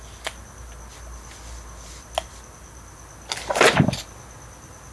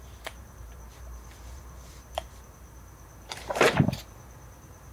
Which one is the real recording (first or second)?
first